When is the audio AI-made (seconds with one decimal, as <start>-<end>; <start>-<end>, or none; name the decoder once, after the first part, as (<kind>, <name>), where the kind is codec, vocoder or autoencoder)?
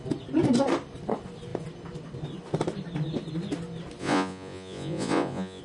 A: 4.0-5.6 (vocoder, Vocos)